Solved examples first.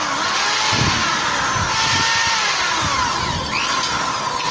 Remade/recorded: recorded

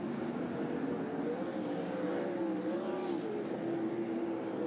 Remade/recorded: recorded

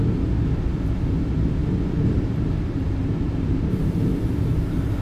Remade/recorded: recorded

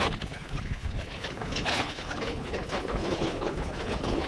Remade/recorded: remade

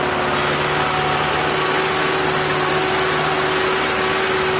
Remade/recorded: recorded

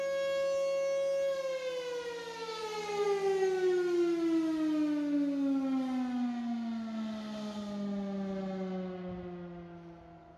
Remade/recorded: recorded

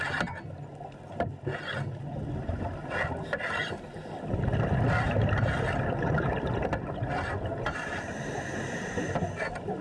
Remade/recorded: recorded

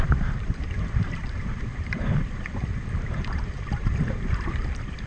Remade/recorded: remade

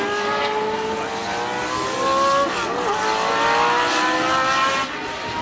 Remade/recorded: recorded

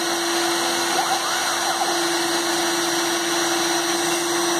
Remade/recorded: recorded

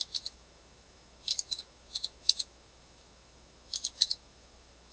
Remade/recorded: remade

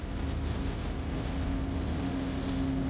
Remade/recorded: recorded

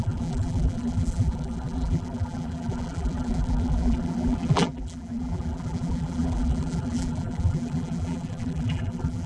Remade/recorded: remade